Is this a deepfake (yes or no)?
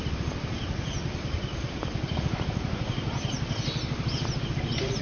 no